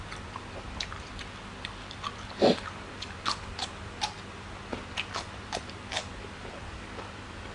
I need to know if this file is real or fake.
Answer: real